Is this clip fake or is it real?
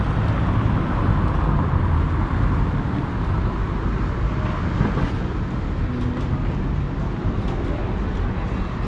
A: real